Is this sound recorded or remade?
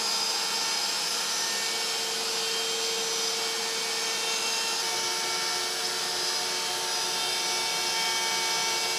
recorded